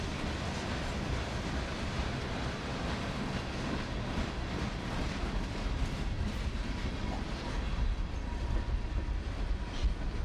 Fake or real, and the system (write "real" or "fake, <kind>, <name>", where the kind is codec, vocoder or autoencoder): real